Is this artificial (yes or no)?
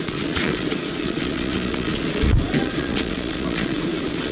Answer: yes